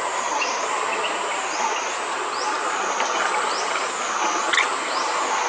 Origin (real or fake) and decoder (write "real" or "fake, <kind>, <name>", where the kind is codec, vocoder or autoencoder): real